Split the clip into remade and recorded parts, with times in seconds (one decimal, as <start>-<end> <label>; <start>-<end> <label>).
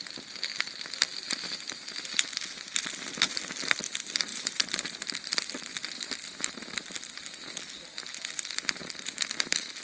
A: 0.0-4.3 recorded; 4.3-5.3 remade; 5.3-9.8 recorded